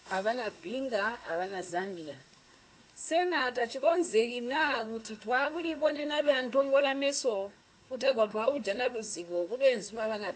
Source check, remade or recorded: remade